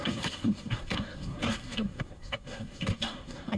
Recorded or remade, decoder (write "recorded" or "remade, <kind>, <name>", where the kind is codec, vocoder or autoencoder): remade, codec, SNAC